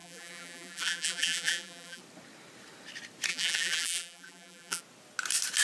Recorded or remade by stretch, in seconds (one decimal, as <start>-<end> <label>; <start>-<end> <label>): 0.0-2.0 remade; 2.0-3.3 recorded; 3.3-4.8 remade; 4.8-5.6 recorded

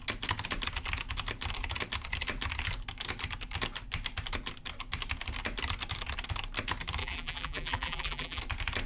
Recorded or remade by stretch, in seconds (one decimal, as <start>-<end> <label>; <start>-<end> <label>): 0.0-7.0 recorded; 7.0-8.4 remade; 8.4-8.9 recorded

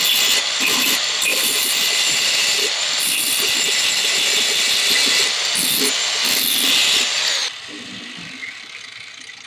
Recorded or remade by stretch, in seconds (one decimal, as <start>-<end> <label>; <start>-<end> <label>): 0.0-1.3 recorded; 1.3-4.9 remade; 4.9-7.4 recorded; 7.4-8.8 remade; 8.8-9.5 recorded

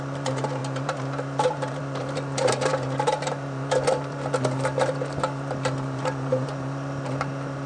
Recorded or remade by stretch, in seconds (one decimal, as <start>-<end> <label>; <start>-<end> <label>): 0.0-7.7 remade

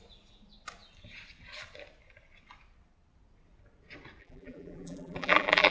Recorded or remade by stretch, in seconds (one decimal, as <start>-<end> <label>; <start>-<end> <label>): 0.0-4.2 recorded; 4.2-5.7 remade

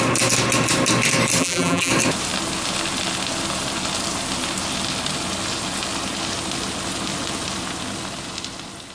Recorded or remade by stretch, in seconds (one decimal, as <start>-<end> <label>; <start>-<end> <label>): 0.0-1.4 recorded; 1.4-1.9 remade; 1.9-8.9 recorded

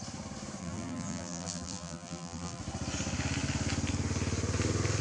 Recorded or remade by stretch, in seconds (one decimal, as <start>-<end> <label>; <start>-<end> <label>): 0.0-0.6 recorded; 0.6-2.6 remade; 2.6-5.0 recorded